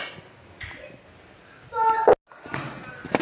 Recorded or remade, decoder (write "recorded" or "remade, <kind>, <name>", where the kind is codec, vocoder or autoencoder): recorded